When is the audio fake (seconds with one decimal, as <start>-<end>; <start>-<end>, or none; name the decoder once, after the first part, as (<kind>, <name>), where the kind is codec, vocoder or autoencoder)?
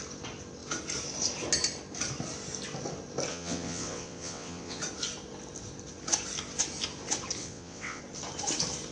3.3-4.8 (vocoder, WaveNeXt); 7.4-8.0